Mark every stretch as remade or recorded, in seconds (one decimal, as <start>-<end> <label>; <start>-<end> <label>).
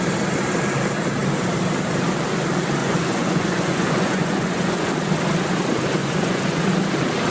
0.0-2.8 recorded; 2.8-4.9 remade; 4.9-6.0 recorded; 6.0-6.7 remade; 6.7-7.3 recorded